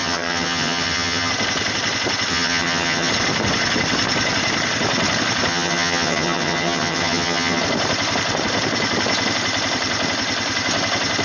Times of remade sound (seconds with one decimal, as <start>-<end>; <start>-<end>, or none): 0.0-1.3; 2.3-3.1; 5.5-7.6